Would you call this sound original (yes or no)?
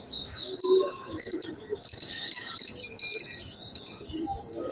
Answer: no